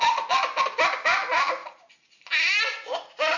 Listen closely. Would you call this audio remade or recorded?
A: recorded